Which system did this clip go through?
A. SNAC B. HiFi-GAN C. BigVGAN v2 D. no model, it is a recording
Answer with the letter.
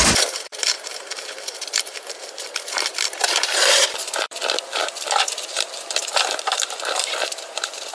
C